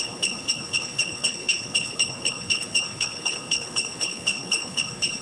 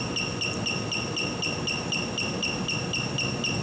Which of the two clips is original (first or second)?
second